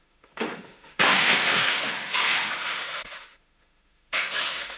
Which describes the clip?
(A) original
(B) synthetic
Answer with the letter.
B